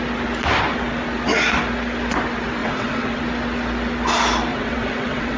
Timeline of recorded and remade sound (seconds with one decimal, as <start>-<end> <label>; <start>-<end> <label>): 0.0-2.6 recorded; 2.6-3.2 remade; 3.2-4.5 recorded; 4.5-5.4 remade